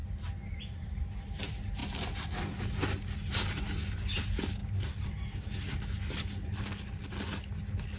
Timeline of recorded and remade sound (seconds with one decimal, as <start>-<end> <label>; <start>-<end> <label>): 0.0-8.0 recorded